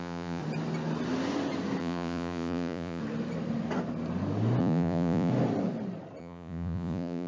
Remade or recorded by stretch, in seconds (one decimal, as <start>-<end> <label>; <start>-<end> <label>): 0.0-0.4 remade; 0.4-1.8 recorded; 1.8-3.0 remade; 3.0-4.6 recorded; 4.6-5.3 remade; 5.3-6.2 recorded; 6.2-7.3 remade

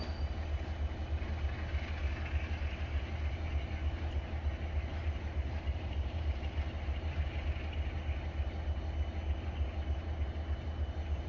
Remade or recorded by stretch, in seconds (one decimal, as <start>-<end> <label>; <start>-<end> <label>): 0.0-4.9 recorded; 4.9-7.4 remade; 7.4-11.3 recorded

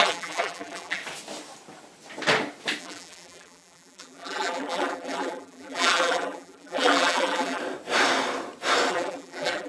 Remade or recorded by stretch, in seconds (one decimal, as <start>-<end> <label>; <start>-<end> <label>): 0.0-1.0 remade; 1.0-2.8 recorded; 2.8-7.6 remade; 7.6-8.9 recorded; 8.9-9.7 remade

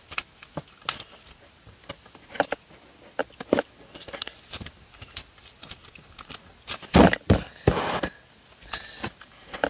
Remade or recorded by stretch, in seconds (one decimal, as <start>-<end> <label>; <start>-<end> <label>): 0.0-9.7 recorded

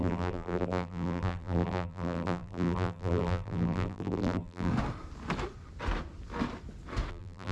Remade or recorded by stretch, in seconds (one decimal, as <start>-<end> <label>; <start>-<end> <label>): 0.0-4.7 remade; 4.7-7.1 recorded; 7.1-7.5 remade